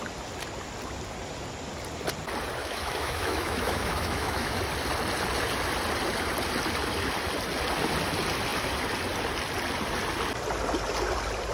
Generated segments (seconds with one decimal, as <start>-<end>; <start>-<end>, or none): 2.6-4.6